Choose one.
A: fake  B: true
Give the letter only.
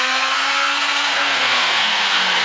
A